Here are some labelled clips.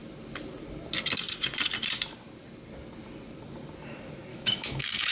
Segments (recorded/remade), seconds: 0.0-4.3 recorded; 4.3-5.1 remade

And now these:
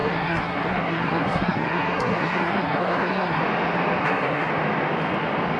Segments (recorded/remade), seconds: 0.0-3.4 remade; 3.4-4.0 recorded; 4.0-4.5 remade; 4.5-5.6 recorded

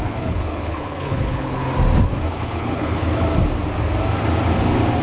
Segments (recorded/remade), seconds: 0.0-1.6 remade; 1.6-2.3 recorded; 2.3-3.3 remade; 3.3-5.0 recorded

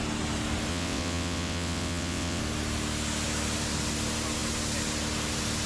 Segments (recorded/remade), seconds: 0.0-0.7 recorded; 0.7-2.4 remade; 2.4-5.7 recorded